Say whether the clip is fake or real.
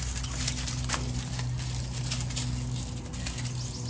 real